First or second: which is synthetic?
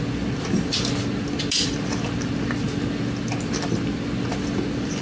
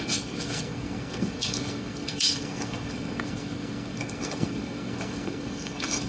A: second